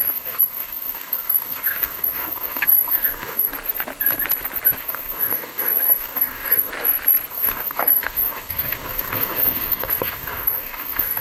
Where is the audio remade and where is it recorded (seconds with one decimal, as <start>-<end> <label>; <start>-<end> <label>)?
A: 0.0-3.5 remade; 3.5-4.8 recorded; 4.8-6.7 remade; 6.7-7.3 recorded; 7.3-11.2 remade